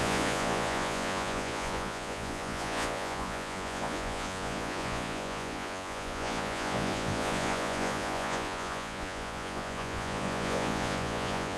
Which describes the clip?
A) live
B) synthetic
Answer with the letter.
B